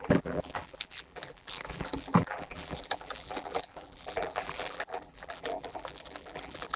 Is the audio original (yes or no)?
no